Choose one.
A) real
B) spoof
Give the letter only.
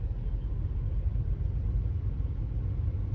A